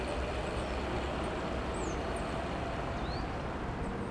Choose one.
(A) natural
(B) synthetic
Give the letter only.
B